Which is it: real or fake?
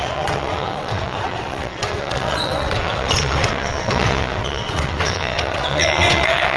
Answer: fake